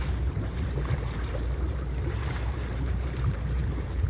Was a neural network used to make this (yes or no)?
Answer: yes